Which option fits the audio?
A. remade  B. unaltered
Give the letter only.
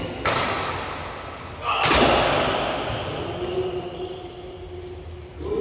B